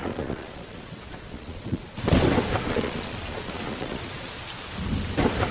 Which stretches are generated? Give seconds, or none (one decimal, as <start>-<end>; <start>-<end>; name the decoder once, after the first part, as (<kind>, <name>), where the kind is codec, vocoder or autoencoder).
0.0-2.0 (vocoder, Vocos); 2.7-4.4